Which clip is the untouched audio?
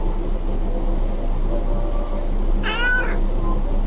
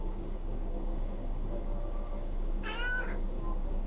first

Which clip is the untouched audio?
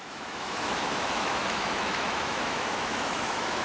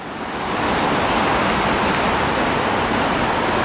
second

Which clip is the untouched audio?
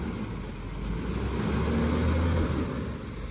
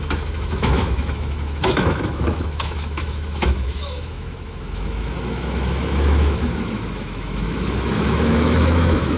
first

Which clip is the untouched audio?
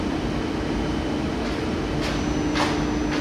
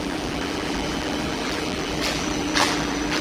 first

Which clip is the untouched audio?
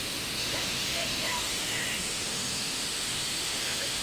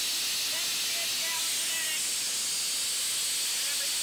second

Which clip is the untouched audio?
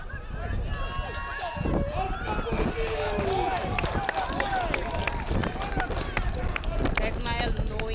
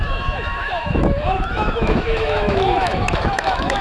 first